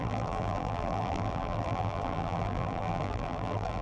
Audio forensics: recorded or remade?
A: remade